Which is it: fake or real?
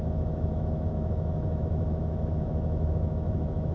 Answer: fake